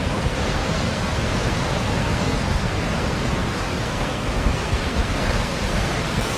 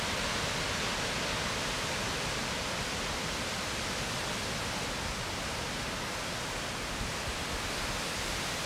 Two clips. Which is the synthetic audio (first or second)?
first